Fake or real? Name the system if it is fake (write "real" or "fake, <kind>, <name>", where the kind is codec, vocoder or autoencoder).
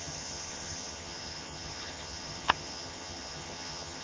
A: fake, vocoder, HiFi-GAN